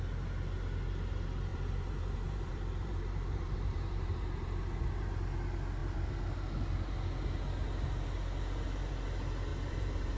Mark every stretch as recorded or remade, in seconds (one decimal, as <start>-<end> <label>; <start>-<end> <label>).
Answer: 0.0-1.5 recorded; 1.5-4.6 remade; 4.6-9.5 recorded; 9.5-10.2 remade